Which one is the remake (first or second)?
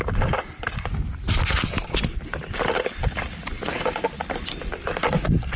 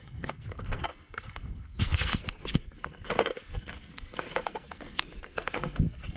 second